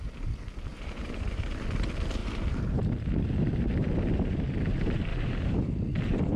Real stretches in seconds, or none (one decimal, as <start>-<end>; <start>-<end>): 0.0-0.7; 1.5-2.2; 2.8-5.1; 5.6-6.4